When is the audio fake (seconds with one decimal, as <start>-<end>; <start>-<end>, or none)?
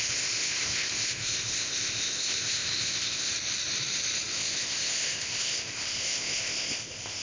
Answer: 0.0-3.3; 4.3-7.2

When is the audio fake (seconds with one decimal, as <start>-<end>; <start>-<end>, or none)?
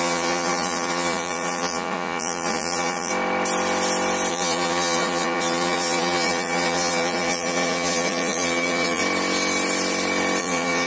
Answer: 0.0-3.1; 4.3-9.0; 10.4-10.9